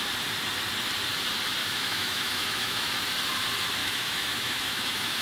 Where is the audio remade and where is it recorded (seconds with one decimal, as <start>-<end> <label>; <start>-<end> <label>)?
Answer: 0.0-1.6 recorded; 1.6-2.9 remade; 2.9-3.8 recorded; 3.8-5.2 remade